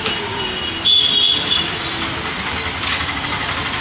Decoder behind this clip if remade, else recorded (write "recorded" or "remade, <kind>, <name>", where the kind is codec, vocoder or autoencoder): recorded